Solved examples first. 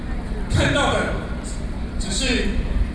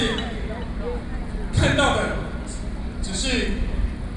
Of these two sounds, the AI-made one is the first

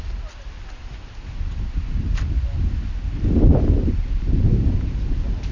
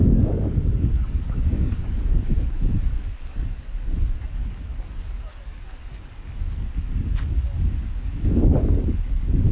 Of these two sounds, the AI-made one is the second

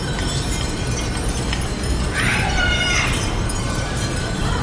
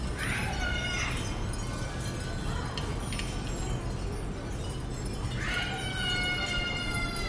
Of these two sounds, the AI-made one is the first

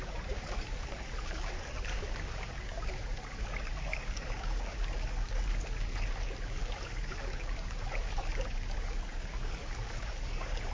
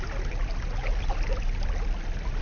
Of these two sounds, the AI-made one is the first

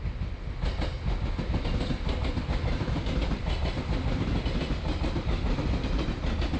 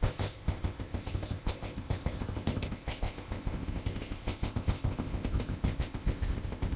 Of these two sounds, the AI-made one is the second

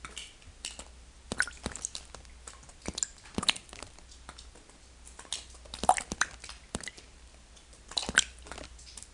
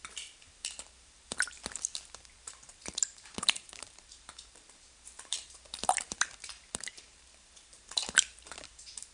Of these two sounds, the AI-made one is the second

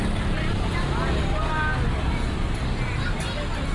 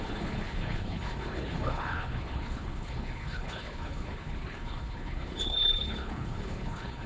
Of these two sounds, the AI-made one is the second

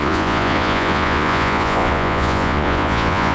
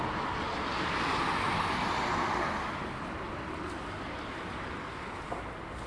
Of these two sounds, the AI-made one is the first